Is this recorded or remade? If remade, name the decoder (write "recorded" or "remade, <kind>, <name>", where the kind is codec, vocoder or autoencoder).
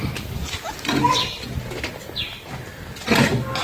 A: recorded